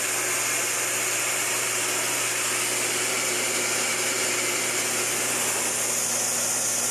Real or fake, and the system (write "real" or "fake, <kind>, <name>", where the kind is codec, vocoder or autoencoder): real